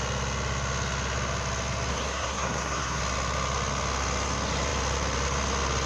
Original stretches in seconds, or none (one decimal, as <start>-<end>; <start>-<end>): 0.0-1.9; 3.0-5.9